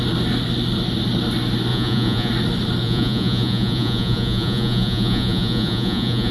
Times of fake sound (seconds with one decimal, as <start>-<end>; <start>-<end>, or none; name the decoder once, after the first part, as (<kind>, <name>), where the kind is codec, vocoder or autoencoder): 1.7-2.3 (vocoder, Vocos); 2.8-6.3